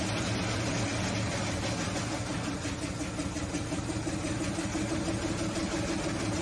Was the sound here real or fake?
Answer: real